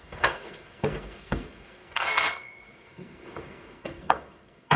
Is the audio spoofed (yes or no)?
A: yes